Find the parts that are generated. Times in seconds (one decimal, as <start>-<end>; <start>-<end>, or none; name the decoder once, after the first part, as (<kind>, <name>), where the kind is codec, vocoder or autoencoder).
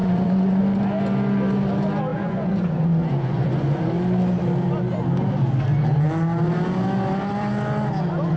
0.0-0.6 (vocoder, Vocos); 2.1-3.8